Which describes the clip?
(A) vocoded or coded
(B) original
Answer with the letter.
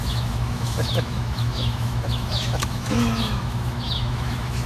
A